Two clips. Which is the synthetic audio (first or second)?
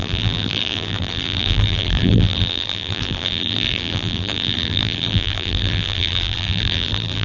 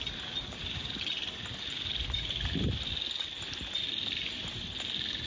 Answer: first